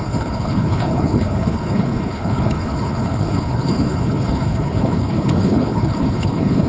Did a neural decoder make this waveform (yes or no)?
yes